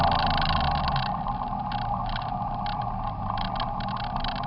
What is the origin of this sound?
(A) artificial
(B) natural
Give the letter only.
B